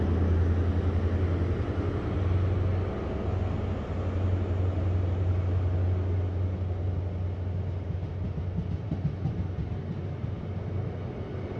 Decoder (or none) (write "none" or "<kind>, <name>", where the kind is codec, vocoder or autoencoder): none